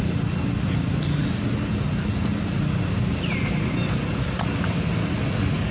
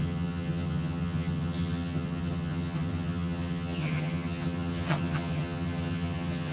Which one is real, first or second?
first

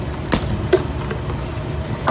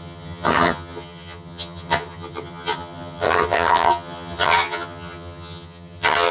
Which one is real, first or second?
first